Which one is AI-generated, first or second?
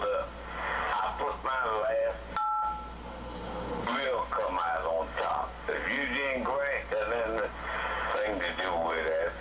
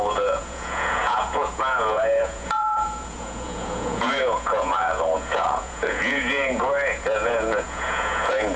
second